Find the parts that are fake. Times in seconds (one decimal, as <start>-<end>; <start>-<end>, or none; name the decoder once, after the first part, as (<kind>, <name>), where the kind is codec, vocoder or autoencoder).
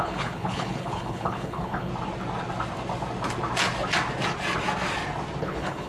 0.0-1.9 (codec, HILCodec); 5.4-5.9